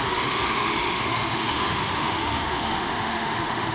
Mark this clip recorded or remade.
remade